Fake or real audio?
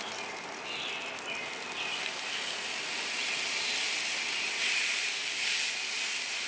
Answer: real